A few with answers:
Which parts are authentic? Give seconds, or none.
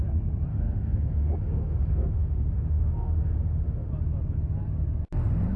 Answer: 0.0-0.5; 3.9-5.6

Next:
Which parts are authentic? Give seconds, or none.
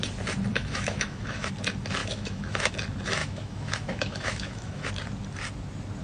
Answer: 0.0-0.5; 1.5-2.0; 2.7-3.2; 4.9-6.0